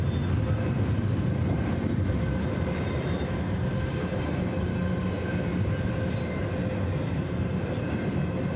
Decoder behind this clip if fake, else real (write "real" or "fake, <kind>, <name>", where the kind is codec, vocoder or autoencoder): real